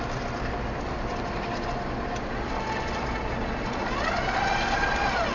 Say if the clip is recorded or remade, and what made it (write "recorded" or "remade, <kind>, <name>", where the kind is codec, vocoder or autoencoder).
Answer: recorded